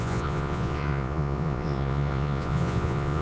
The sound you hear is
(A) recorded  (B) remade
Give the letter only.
B